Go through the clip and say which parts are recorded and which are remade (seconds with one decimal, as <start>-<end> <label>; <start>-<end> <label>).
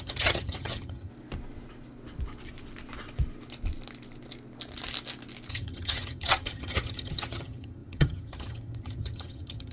0.0-1.1 remade; 1.1-5.5 recorded; 5.5-9.7 remade